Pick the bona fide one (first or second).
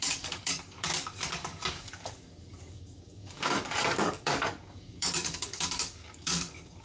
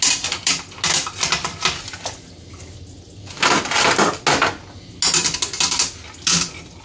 second